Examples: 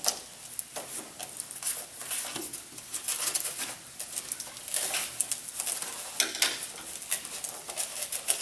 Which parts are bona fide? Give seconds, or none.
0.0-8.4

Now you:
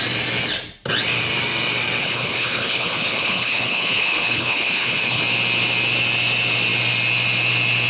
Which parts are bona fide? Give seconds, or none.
0.0-2.0; 5.2-7.9

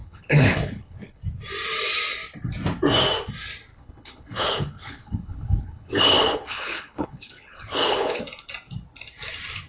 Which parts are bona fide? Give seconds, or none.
1.2-3.7; 8.2-9.7

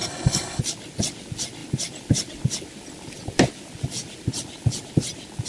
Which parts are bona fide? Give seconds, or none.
0.6-5.5

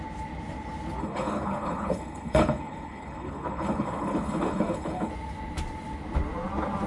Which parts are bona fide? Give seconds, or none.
0.0-1.0; 5.1-6.9